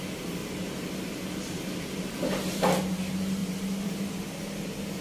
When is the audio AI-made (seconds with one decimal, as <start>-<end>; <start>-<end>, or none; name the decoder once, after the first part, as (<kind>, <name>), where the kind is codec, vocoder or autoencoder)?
0.4-2.8 (vocoder, BigVGAN v2); 3.4-4.4